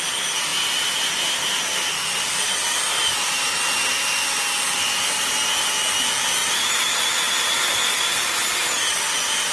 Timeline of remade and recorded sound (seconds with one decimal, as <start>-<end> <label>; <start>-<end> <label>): 0.0-0.5 recorded; 0.5-2.5 remade; 2.5-9.5 recorded